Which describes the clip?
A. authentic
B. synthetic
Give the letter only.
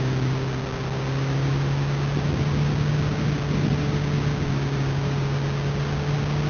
A